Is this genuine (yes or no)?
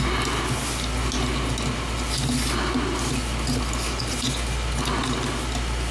yes